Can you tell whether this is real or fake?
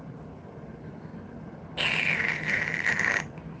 real